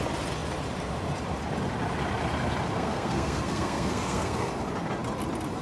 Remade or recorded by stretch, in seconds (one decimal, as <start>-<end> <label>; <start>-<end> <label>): 0.0-2.7 recorded; 2.7-4.5 remade; 4.5-5.6 recorded